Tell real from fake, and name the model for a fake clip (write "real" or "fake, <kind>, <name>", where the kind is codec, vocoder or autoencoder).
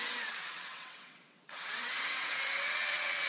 fake, vocoder, WaveNeXt